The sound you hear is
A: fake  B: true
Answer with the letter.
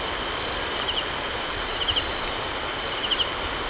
B